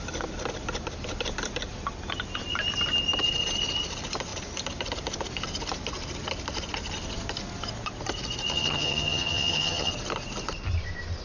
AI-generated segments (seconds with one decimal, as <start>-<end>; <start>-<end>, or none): 8.5-9.9